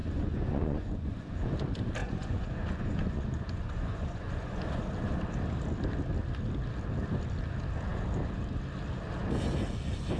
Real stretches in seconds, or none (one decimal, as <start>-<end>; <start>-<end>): 1.5-2.0; 4.8-10.2